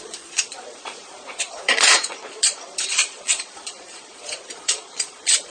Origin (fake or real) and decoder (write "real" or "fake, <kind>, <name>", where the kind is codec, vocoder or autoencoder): fake, vocoder, Vocos